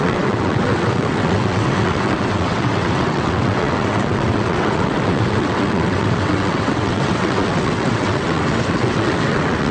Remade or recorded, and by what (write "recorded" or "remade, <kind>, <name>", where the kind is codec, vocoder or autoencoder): remade, vocoder, WaveNeXt